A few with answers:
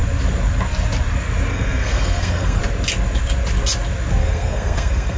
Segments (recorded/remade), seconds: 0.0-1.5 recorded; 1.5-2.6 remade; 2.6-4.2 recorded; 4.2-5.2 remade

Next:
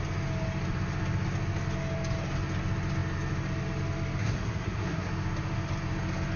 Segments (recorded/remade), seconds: 0.0-4.2 recorded; 4.2-5.1 remade; 5.1-6.4 recorded